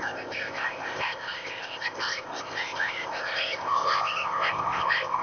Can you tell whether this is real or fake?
fake